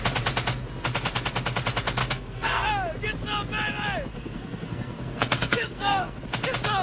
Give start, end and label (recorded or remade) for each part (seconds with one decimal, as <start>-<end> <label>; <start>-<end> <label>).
0.0-2.0 recorded; 2.0-2.7 remade; 2.7-4.1 recorded; 4.1-6.2 remade; 6.2-6.8 recorded